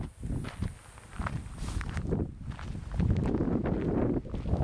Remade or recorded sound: recorded